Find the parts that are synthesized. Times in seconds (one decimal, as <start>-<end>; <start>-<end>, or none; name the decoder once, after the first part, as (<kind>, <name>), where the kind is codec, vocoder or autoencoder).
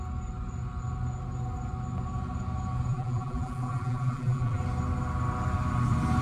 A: 2.9-4.6 (vocoder, BigVGAN v2)